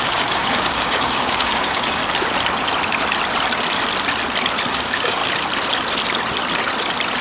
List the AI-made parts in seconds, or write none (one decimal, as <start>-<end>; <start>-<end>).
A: 0.0-2.0; 4.7-5.2